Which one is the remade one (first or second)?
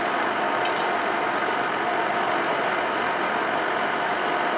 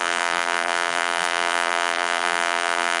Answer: second